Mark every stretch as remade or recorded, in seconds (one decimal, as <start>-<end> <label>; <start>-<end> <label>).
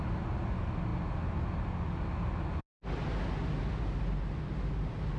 0.0-5.2 recorded